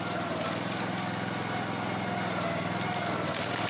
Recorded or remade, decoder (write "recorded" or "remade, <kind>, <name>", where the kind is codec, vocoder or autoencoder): recorded